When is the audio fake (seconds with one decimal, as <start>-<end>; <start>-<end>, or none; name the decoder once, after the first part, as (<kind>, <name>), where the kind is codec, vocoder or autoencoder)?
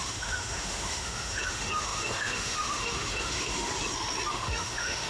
0.0-3.7 (autoencoder, DAC-VAE); 4.3-5.1